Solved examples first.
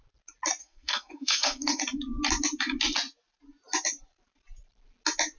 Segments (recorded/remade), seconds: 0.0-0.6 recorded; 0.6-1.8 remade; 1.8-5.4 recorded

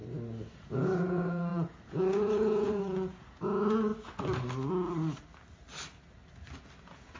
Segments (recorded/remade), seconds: 0.0-0.6 recorded; 0.6-3.9 remade; 3.9-6.8 recorded; 6.8-7.2 remade